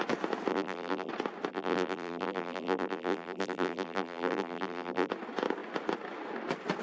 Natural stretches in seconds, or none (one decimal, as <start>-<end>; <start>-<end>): 0.0-0.5; 1.1-1.5; 5.1-6.8